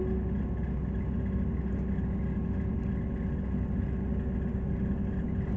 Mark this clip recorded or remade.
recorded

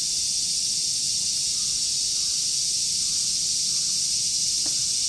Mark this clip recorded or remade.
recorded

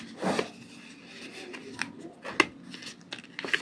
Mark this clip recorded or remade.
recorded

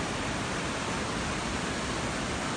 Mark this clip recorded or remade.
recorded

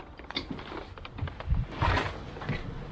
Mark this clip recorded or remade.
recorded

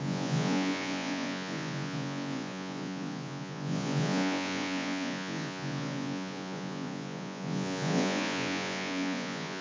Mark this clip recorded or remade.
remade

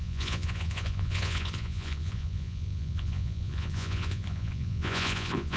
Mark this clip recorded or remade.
remade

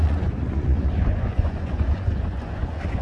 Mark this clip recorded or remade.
remade